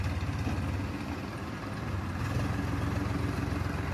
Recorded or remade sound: recorded